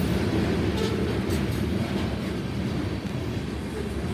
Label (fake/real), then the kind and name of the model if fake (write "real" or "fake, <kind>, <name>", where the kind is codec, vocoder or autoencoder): real